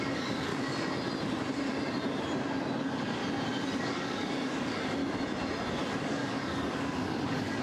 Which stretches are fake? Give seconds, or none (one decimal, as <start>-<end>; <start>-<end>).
0.0-0.5; 2.8-3.2; 3.8-5.0; 5.9-7.6

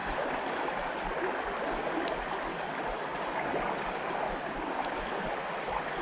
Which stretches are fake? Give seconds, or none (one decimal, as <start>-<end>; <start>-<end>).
none

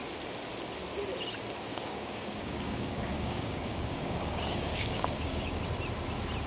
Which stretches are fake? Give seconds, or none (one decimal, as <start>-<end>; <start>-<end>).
1.7-5.6

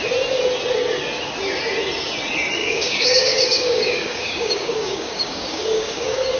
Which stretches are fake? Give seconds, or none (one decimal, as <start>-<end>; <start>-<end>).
2.6-6.4

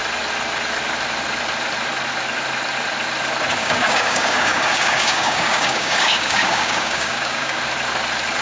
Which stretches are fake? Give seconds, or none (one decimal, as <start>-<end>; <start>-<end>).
3.6-7.6